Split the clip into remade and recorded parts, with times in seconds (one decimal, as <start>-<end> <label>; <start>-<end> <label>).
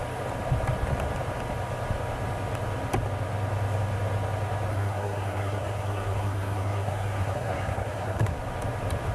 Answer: 0.0-4.7 recorded; 4.7-8.4 remade; 8.4-9.1 recorded